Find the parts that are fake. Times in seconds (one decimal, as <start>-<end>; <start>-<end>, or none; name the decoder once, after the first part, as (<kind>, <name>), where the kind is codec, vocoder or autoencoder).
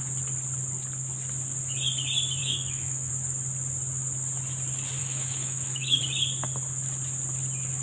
2.4-3.1 (autoencoder, DAC-VAE); 5.0-6.0